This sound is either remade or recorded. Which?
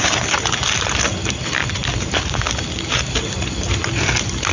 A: recorded